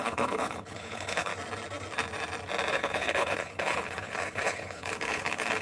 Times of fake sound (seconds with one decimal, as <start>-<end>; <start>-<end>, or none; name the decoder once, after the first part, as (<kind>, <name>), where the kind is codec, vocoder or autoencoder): 0.0-1.3 (codec, HILCodec); 2.7-5.6